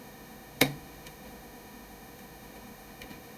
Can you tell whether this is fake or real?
fake